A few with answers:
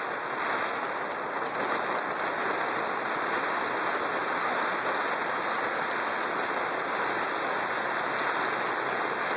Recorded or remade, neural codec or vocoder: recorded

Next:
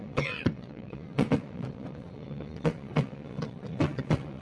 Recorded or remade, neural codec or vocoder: remade, vocoder, WaveNeXt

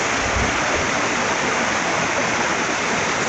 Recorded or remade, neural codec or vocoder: recorded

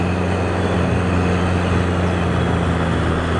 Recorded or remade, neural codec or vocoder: recorded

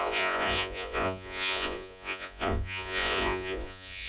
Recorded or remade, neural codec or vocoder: remade, vocoder, Vocos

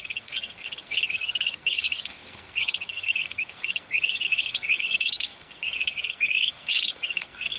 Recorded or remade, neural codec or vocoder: remade, codec, SNAC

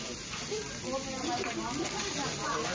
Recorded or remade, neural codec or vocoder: recorded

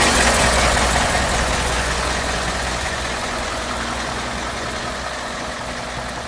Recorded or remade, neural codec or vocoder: remade, vocoder, Vocos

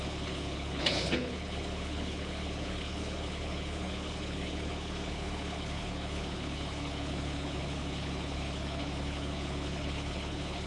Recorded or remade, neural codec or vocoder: remade, codec, HILCodec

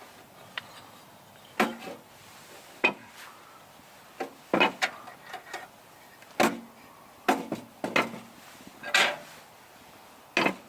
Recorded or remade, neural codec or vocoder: recorded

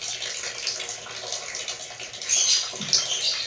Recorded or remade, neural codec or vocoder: recorded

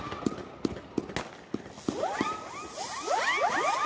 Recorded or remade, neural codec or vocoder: recorded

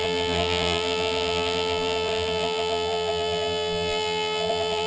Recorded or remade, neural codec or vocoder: remade, vocoder, BigVGAN v2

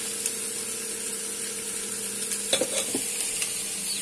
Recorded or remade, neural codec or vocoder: recorded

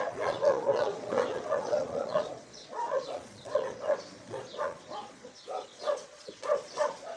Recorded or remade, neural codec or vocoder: remade, vocoder, Vocos